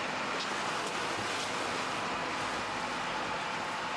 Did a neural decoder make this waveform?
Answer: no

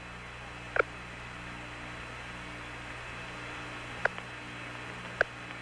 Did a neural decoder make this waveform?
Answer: no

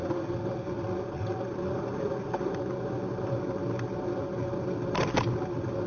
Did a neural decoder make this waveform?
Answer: no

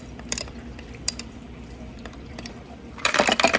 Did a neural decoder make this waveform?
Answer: yes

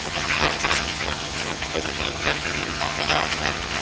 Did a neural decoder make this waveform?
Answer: yes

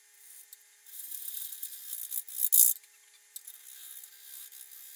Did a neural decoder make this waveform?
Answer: no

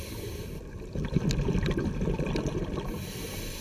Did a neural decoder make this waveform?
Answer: yes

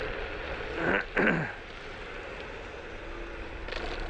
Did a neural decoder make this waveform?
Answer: no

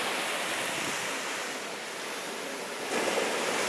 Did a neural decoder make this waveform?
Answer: yes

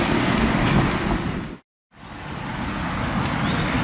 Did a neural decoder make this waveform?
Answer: no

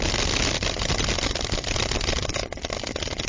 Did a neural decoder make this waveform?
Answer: no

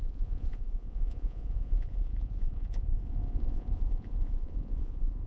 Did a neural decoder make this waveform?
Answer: yes